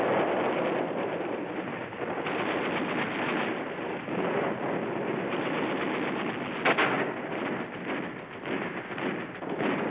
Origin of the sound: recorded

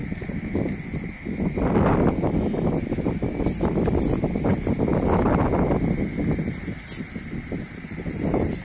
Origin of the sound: recorded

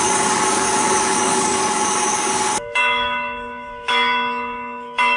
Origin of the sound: remade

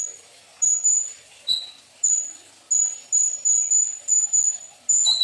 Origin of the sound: recorded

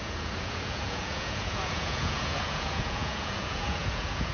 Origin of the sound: remade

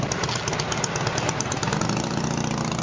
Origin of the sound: recorded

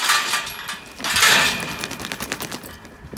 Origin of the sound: recorded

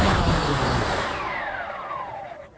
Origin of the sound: recorded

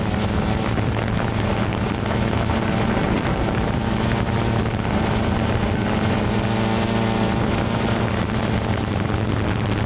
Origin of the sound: recorded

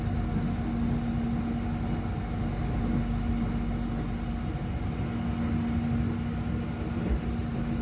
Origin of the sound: recorded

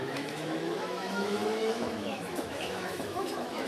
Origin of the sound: remade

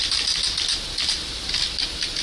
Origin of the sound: recorded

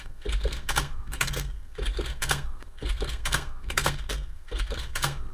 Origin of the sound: remade